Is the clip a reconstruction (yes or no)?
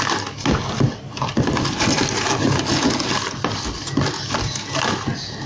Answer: no